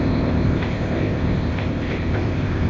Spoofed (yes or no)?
yes